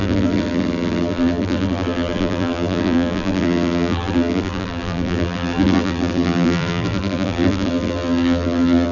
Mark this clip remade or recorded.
remade